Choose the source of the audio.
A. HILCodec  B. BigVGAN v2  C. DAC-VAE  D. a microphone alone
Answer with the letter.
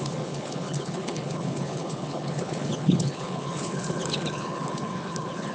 A